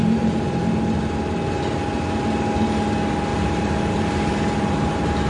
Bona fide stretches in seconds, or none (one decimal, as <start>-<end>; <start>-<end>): 1.0-3.3